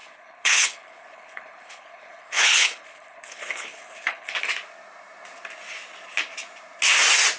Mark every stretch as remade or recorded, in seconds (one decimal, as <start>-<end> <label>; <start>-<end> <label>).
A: 0.0-4.4 remade; 4.4-7.4 recorded